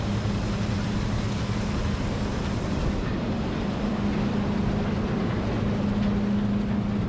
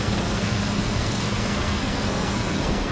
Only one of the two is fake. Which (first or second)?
second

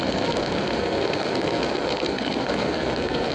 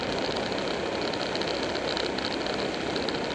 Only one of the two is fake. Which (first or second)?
first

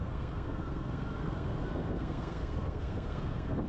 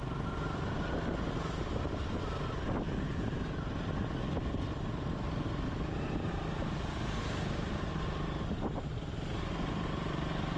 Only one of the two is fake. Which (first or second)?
first